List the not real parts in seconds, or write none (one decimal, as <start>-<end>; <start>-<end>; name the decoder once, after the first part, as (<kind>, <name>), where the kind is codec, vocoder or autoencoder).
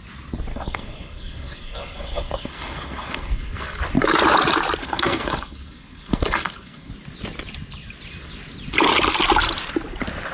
0.5-3.8 (codec, SNAC); 4.8-6.9